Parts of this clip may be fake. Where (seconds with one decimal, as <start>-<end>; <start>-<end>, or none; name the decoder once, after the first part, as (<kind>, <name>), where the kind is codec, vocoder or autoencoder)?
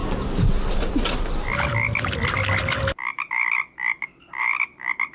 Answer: none